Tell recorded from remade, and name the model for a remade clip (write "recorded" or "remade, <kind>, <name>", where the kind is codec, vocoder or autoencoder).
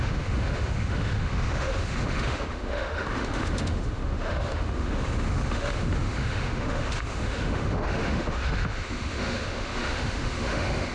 remade, autoencoder, DAC-VAE